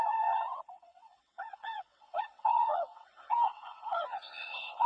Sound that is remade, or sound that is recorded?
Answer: remade